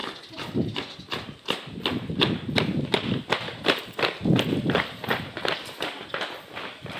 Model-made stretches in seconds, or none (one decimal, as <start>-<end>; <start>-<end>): none